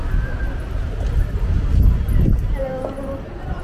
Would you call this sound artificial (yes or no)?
no